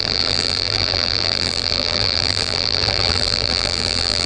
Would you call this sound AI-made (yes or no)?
yes